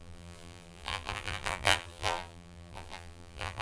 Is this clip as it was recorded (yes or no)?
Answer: no